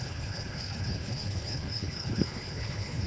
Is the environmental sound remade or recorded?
remade